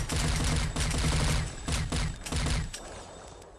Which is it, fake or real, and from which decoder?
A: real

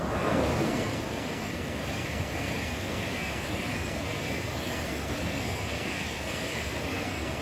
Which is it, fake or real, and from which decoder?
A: fake, codec, SNAC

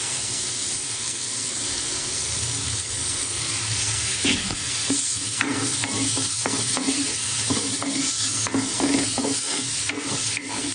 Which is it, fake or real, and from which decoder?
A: fake, codec, SNAC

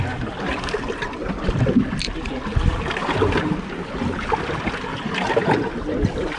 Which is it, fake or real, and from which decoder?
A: real